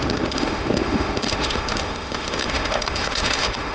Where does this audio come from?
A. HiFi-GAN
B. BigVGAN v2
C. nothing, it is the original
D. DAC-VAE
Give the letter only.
D